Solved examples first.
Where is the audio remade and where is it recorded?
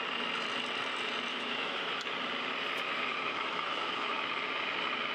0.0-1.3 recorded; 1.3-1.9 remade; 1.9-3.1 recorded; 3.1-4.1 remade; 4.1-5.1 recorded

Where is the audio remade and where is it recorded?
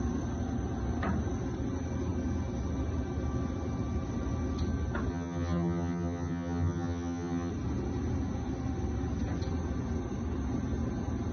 0.0-5.1 recorded; 5.1-7.5 remade; 7.5-11.3 recorded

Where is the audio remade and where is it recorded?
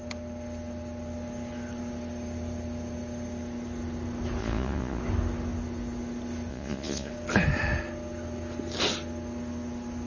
0.0-4.4 recorded; 4.4-5.0 remade; 5.0-6.5 recorded; 6.5-7.1 remade; 7.1-10.1 recorded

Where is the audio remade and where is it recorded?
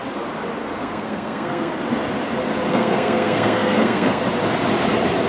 0.0-0.6 recorded; 0.6-1.7 remade; 1.7-2.7 recorded; 2.7-4.2 remade; 4.2-5.3 recorded